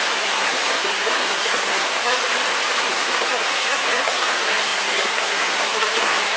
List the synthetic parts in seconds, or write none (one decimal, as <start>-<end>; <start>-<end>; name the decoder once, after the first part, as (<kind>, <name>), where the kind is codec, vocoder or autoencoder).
0.0-2.2 (codec, SNAC); 2.8-6.4